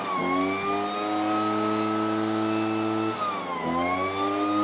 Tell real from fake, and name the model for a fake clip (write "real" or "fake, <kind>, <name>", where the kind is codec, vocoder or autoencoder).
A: real